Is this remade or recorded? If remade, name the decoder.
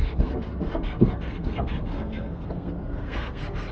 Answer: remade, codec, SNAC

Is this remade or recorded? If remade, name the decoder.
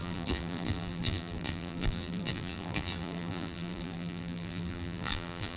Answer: remade, vocoder, BigVGAN v2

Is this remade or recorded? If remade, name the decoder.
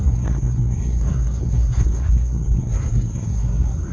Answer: remade, codec, SNAC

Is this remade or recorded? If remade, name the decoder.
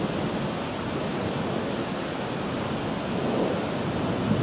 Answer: recorded